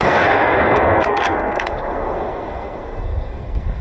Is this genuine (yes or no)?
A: no